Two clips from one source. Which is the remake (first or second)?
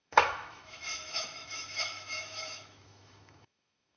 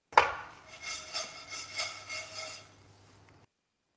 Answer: first